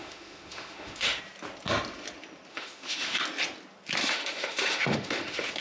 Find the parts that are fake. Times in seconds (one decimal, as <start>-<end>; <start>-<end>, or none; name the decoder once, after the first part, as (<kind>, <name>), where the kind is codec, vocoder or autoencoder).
0.0-1.2 (autoencoder, DAC-VAE); 2.5-3.2; 4.0-5.6